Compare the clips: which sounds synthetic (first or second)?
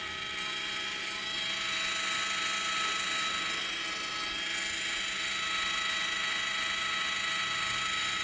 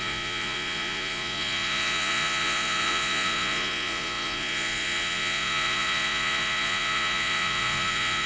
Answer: second